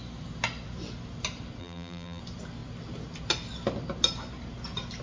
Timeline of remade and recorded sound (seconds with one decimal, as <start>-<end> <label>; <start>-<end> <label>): 0.0-1.6 recorded; 1.6-2.2 remade; 2.2-5.0 recorded